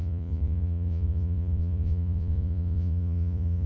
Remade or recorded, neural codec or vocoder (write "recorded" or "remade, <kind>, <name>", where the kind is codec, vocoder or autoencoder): remade, vocoder, Vocos